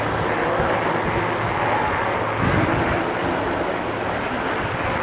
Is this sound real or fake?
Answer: real